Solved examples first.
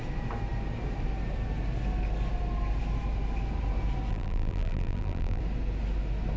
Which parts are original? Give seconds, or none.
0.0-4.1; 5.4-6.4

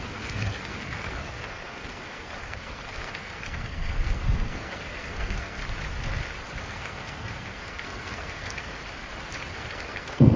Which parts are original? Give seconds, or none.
5.6-6.6; 8.8-9.5

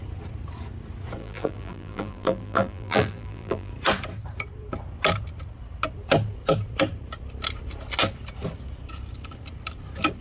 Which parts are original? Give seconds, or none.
0.0-1.2; 3.7-10.2

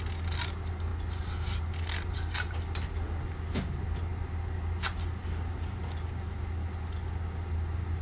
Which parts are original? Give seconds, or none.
0.0-8.0

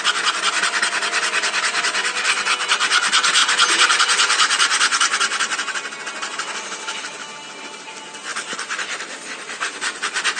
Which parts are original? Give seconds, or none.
0.0-3.4; 4.0-8.3; 9.5-10.4

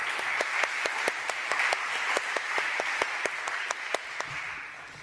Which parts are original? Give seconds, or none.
3.0-4.0; 4.5-5.0

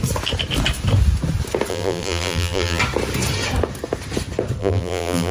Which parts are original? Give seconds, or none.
0.0-1.7; 2.8-4.6

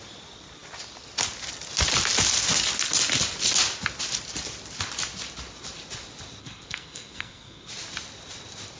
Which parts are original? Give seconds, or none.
0.0-6.4; 7.7-8.8